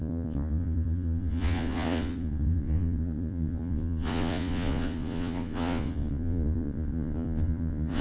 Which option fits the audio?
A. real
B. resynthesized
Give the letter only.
B